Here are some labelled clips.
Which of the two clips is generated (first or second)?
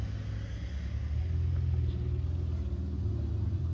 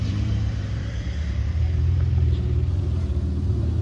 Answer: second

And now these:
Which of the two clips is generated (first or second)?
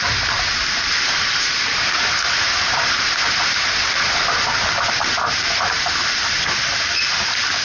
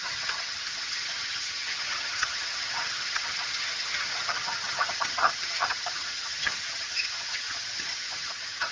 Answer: second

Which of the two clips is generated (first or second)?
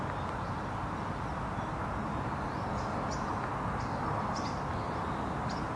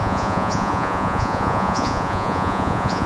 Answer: second